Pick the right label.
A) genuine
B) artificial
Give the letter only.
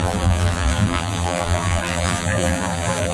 B